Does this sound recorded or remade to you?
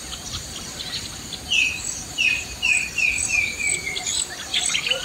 recorded